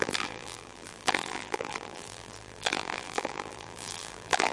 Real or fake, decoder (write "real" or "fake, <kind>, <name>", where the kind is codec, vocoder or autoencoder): fake, vocoder, BigVGAN v2